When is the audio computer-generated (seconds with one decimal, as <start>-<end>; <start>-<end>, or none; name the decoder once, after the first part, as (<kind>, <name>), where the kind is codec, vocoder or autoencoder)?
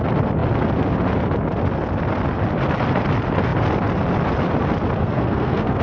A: 5.0-5.8 (codec, SNAC)